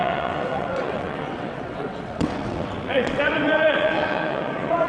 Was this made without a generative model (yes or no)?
no